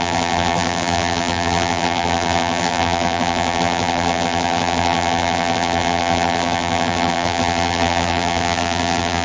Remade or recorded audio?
remade